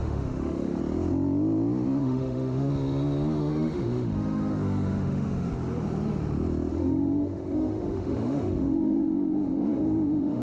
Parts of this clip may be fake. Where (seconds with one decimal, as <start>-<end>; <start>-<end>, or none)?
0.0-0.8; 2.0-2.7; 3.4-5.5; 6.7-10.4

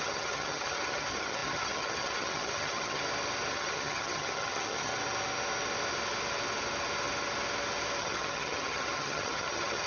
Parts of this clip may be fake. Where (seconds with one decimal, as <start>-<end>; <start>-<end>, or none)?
0.0-3.0; 3.5-4.9; 8.0-9.9

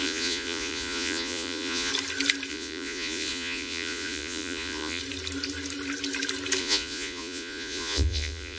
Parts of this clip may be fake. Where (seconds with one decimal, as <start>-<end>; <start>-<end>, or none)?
0.0-1.9; 2.5-5.0; 6.6-8.6

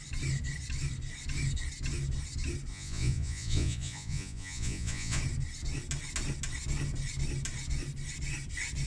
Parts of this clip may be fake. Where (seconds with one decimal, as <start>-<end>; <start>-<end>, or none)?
2.7-5.2

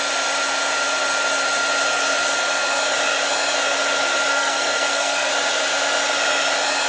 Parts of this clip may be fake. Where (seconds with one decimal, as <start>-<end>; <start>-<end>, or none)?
4.3-5.3